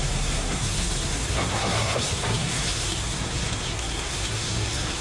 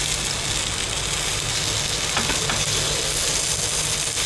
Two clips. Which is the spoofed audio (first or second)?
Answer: first